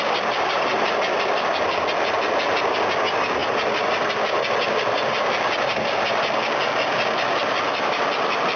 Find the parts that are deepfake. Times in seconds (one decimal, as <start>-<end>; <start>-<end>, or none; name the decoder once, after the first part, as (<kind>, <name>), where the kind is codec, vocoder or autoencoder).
none